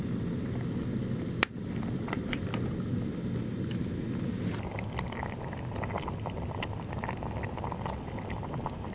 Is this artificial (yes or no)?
no